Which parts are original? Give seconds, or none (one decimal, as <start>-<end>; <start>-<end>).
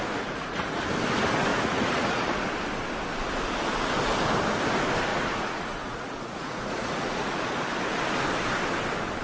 0.8-1.5; 2.4-5.1; 7.4-9.2